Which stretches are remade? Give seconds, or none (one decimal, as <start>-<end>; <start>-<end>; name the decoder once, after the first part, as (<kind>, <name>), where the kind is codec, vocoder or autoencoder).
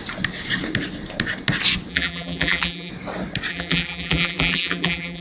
1.9-2.9 (vocoder, BigVGAN v2); 3.5-5.2